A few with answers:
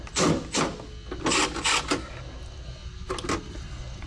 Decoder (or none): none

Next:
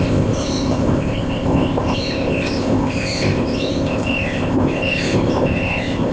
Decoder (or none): codec, ZipCodec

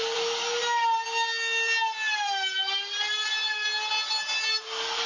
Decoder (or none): none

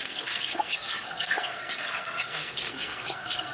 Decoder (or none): codec, SNAC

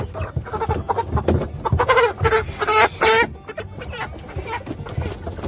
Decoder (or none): none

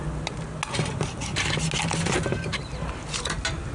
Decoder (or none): none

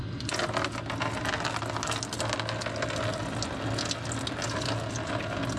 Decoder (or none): none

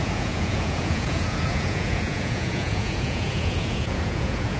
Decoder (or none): vocoder, Vocos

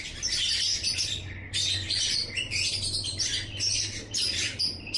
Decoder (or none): none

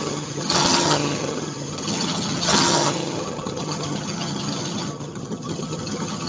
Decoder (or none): vocoder, HiFi-GAN